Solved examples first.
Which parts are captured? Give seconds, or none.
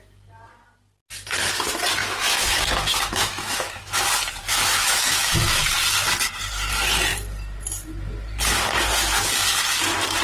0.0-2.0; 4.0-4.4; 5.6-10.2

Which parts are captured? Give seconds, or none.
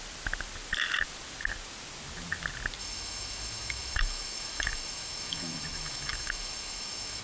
0.0-2.8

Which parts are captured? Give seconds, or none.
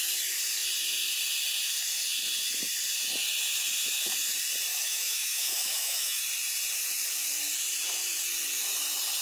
0.0-4.7; 6.2-9.2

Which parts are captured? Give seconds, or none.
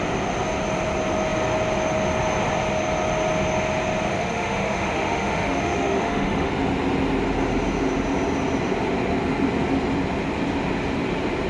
0.0-4.1; 6.5-11.5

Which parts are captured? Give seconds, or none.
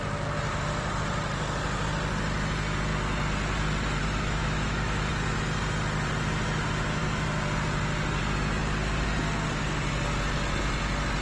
0.0-4.0; 5.1-11.2